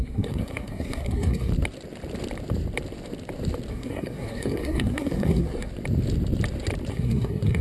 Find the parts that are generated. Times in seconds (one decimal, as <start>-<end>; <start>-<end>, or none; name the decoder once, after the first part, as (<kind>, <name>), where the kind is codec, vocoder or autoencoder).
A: 0.0-1.5 (codec, SNAC); 3.7-5.7; 6.9-7.6

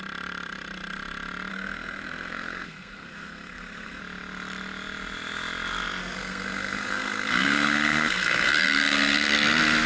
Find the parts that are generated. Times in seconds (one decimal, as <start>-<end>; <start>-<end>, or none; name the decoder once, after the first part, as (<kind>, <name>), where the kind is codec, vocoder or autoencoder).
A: 1.5-4.0 (codec, SNAC); 6.0-9.3

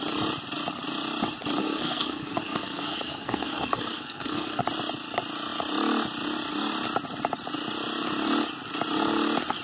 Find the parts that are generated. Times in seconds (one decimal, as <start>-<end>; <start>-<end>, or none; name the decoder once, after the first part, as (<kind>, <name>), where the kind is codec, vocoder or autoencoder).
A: 1.6-4.6 (codec, SNAC)